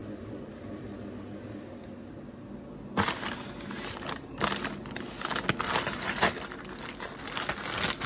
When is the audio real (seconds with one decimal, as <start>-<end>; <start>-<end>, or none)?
1.0-8.1